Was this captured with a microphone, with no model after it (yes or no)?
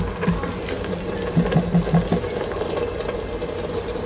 yes